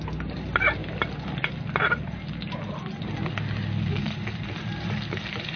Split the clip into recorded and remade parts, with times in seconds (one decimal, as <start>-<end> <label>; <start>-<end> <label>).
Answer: 0.0-0.8 recorded; 0.8-2.3 remade; 2.3-3.9 recorded; 3.9-5.6 remade